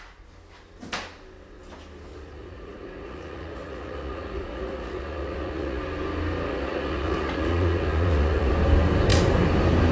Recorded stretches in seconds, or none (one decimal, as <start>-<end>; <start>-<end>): 0.0-2.1; 5.8-6.5; 8.5-9.9